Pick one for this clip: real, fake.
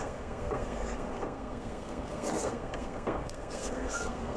fake